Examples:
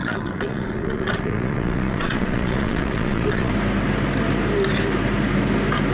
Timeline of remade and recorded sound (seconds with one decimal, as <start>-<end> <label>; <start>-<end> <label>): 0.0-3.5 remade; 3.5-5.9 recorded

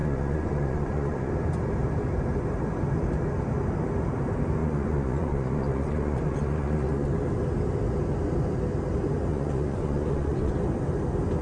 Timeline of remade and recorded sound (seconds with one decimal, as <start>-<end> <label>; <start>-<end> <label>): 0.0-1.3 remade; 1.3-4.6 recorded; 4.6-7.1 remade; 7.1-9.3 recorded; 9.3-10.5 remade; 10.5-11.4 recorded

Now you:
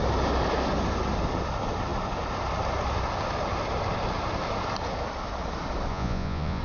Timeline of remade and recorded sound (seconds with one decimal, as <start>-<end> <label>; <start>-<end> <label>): 0.0-5.9 recorded; 5.9-6.6 remade